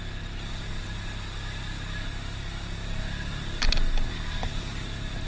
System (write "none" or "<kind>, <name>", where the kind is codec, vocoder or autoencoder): none